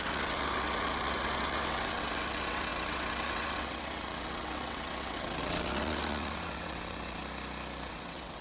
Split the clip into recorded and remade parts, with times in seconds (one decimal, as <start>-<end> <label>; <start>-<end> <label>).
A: 0.0-7.2 remade; 7.2-7.9 recorded; 7.9-8.4 remade